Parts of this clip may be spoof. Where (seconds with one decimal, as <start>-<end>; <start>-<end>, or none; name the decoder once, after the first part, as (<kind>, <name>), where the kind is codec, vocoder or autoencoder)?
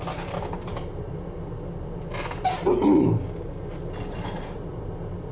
none